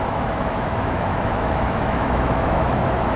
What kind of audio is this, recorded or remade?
remade